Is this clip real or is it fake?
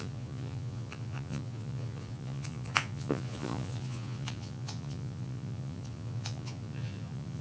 fake